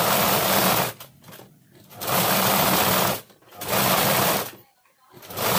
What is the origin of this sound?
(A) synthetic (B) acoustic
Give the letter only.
B